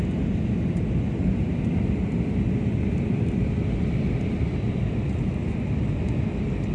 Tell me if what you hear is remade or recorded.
recorded